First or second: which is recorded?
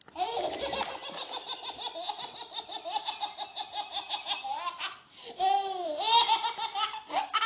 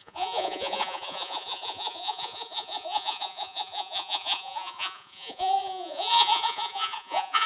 first